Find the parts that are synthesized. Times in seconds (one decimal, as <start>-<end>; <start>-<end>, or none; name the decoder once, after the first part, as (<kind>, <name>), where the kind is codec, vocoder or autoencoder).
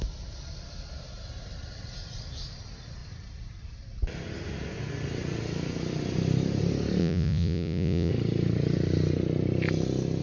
7.0-8.1 (vocoder, Vocos)